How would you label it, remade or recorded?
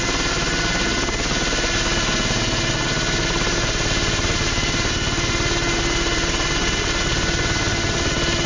recorded